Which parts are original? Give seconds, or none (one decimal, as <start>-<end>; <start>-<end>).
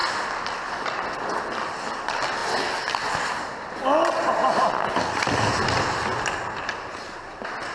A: 0.0-7.7